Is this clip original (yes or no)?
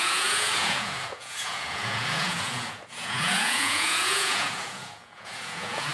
no